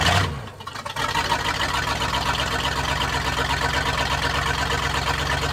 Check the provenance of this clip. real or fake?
real